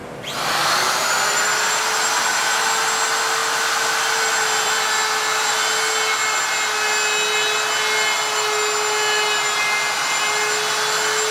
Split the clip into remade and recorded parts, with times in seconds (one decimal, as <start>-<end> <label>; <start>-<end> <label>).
0.0-1.0 remade; 1.0-3.4 recorded; 3.4-5.8 remade; 5.8-11.3 recorded